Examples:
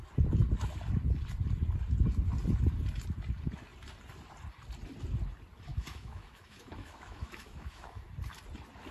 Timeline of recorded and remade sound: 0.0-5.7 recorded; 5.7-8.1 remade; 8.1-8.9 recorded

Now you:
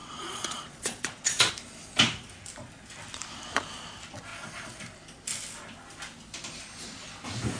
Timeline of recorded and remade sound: 0.0-1.5 remade; 1.5-7.6 recorded